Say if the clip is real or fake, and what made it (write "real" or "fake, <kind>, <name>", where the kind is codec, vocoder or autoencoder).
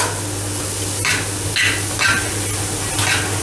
real